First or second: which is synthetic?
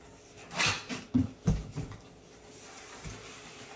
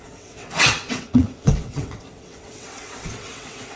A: second